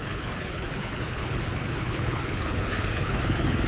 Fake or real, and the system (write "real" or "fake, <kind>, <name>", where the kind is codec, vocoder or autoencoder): fake, codec, HILCodec